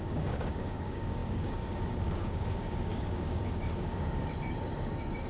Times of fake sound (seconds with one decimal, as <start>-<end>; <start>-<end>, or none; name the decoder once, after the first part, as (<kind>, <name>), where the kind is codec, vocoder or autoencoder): 0.0-5.3 (codec, DAC)